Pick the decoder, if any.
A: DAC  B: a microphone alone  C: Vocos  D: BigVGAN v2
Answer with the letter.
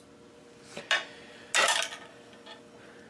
B